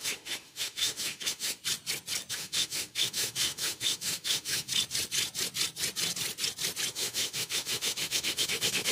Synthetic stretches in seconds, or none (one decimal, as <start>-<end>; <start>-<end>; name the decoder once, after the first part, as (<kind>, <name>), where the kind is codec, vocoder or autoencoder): 0.0-1.6 (autoencoder, DAC-VAE); 2.3-4.7; 6.9-8.9